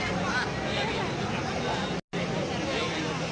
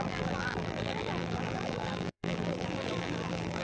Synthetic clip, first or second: second